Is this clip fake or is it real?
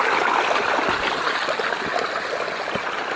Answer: real